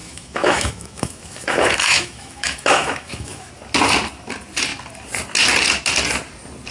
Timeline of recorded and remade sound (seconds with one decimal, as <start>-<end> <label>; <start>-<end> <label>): 0.0-3.5 remade; 3.5-6.7 recorded